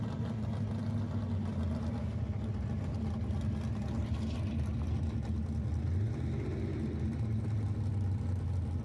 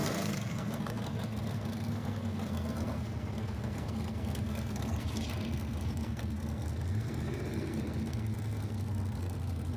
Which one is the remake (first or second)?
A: second